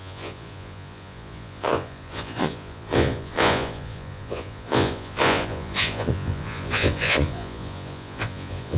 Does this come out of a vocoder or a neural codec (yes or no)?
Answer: yes